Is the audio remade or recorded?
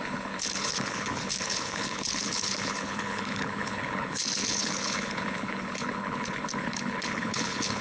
remade